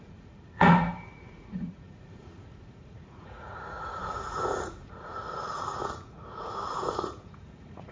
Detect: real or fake fake